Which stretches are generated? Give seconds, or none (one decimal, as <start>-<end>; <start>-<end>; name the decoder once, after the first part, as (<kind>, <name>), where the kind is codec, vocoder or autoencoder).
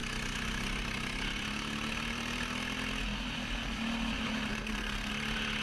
4.5-5.1 (codec, SNAC)